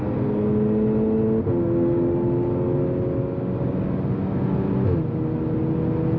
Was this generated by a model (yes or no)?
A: no